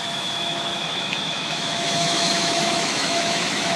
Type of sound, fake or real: fake